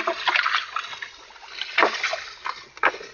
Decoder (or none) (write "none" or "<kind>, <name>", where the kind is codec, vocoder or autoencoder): none